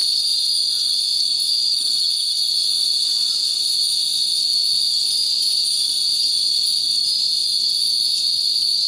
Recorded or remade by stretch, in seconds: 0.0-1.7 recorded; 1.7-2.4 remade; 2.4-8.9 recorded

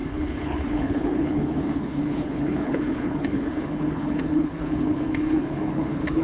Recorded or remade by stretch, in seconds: 0.0-6.2 remade

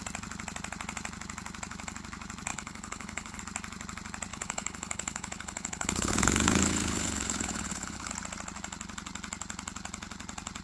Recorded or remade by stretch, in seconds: 0.0-2.5 recorded; 2.5-3.4 remade; 3.4-4.3 recorded; 4.3-8.1 remade; 8.1-10.6 recorded